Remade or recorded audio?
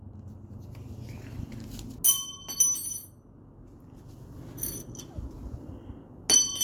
recorded